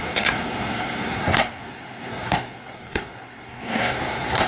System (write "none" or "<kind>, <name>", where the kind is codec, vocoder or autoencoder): codec, SNAC